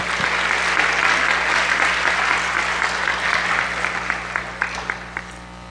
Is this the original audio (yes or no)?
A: yes